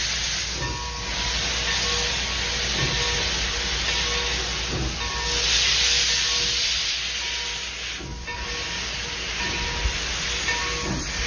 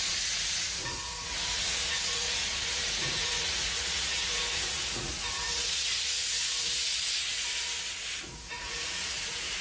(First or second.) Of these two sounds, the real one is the first